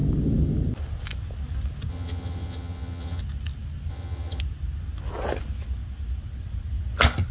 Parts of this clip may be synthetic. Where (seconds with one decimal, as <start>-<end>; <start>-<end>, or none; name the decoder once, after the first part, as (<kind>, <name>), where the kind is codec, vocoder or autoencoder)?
1.9-3.2 (vocoder, HiFi-GAN); 3.9-4.4